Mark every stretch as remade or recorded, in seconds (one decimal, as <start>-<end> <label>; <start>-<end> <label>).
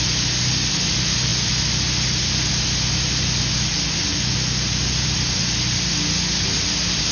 0.0-7.1 recorded